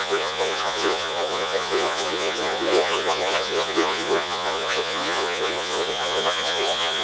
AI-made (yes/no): yes